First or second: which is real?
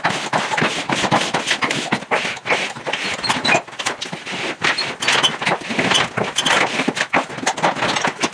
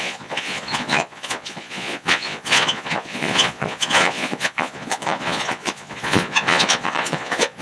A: first